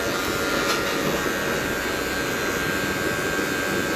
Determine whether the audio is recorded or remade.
recorded